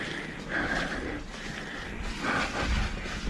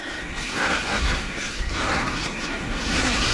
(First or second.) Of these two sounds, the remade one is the second